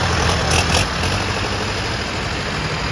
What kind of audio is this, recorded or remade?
recorded